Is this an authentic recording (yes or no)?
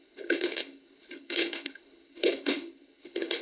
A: no